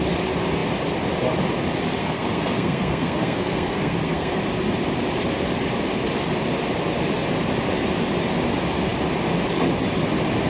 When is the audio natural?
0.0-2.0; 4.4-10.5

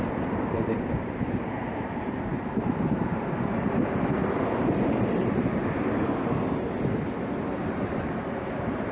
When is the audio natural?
5.6-7.6

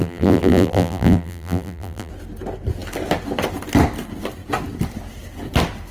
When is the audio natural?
2.1-5.9

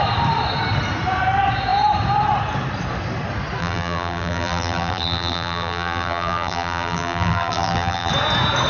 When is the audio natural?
0.0-3.6; 8.1-8.7

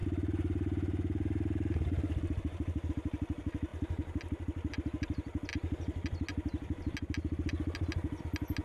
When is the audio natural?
0.0-8.6

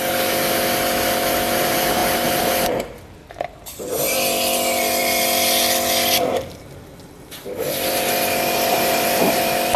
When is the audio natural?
0.0-9.8

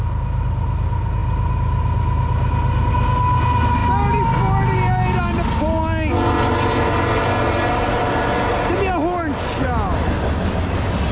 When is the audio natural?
0.0-11.1